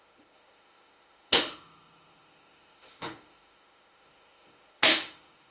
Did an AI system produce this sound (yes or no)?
yes